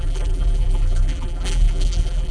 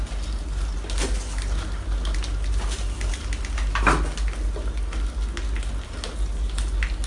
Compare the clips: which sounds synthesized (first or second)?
first